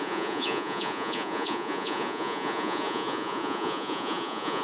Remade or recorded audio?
remade